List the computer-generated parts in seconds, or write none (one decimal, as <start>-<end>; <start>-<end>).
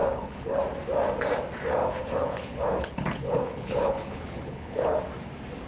0.0-0.6; 1.8-5.0